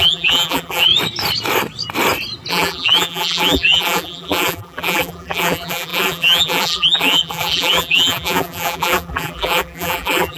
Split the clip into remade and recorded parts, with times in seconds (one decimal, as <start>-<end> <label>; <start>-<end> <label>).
0.0-0.9 remade; 0.9-2.5 recorded; 2.5-10.4 remade